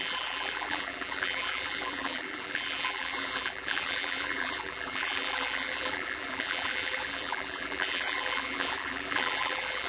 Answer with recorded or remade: remade